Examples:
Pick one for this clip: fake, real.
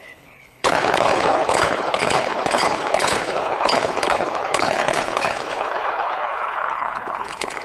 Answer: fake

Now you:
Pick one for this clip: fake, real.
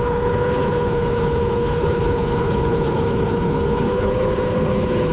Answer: fake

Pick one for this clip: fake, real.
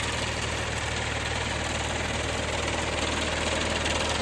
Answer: real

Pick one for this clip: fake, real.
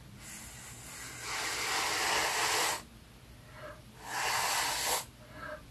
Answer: real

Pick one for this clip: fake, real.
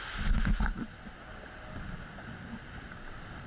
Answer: real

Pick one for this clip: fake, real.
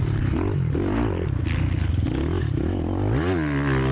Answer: real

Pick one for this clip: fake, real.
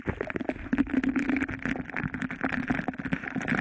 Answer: real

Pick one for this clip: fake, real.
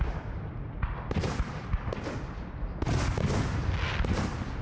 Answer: real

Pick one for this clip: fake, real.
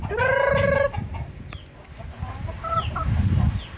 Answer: real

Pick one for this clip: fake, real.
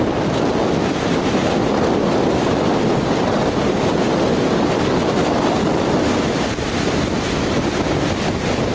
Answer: real